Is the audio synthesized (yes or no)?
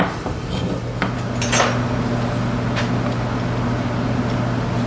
no